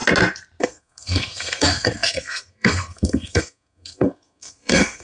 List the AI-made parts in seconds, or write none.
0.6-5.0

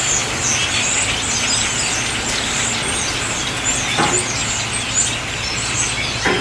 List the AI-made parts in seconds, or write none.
none

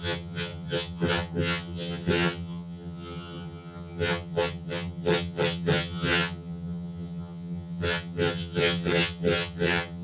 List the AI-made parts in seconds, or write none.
0.0-10.0

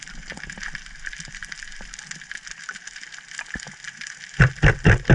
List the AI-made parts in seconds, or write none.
none

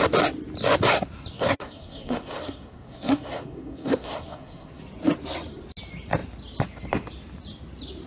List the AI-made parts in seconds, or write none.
1.3-4.8

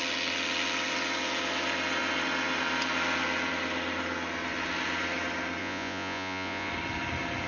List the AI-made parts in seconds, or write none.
5.6-6.7